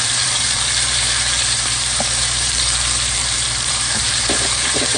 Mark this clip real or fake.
fake